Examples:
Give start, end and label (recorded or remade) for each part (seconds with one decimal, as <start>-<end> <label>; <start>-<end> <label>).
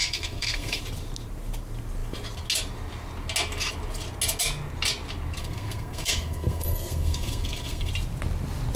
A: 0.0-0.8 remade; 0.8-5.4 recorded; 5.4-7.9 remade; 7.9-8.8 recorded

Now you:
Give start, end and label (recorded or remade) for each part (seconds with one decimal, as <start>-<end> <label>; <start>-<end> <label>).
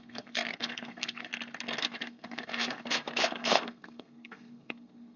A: 0.0-1.3 remade; 1.3-1.8 recorded; 1.8-5.2 remade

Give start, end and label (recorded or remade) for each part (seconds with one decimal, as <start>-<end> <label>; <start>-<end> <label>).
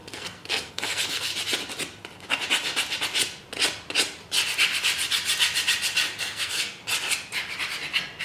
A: 0.0-1.3 remade; 1.3-6.2 recorded; 6.2-6.8 remade; 6.8-8.2 recorded